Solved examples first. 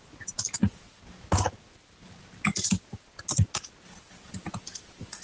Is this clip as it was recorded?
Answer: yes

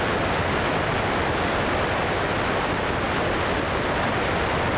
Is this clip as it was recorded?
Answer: yes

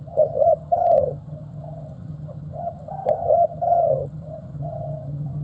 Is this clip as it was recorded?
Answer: no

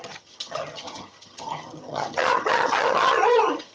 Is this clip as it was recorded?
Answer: no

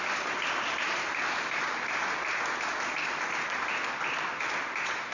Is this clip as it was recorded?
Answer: yes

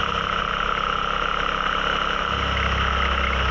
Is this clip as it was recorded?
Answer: yes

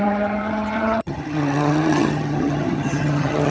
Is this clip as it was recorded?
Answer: no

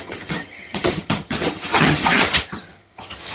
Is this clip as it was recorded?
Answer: no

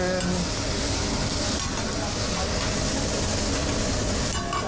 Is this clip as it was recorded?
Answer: yes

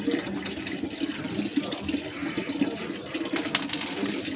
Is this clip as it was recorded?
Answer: yes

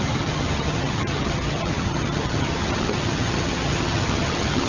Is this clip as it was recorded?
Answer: no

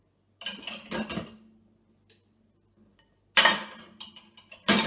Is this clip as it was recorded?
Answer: yes